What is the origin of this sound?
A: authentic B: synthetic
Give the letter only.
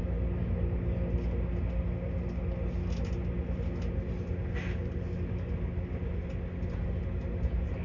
A